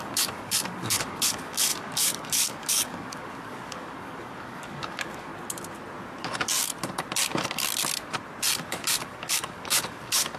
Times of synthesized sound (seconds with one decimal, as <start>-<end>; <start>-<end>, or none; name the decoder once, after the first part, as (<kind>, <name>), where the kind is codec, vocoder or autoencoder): 0.0-5.3 (codec, DAC); 6.2-6.7; 8.7-10.4